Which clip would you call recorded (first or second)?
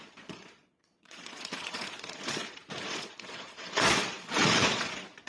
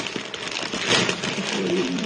second